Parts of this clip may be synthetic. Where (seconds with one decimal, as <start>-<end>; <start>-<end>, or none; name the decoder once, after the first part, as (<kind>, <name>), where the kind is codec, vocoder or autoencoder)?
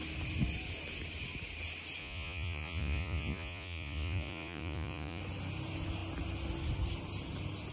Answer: 2.0-5.2 (vocoder, Vocos)